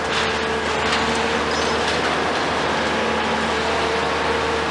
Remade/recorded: recorded